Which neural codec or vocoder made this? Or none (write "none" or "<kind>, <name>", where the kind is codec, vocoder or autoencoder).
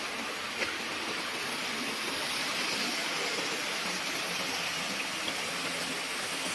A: none